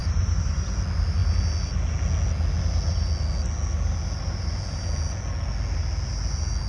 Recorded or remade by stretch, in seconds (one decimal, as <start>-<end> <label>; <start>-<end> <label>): 0.0-0.7 remade; 0.7-6.7 recorded